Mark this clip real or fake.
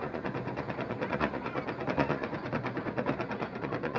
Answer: fake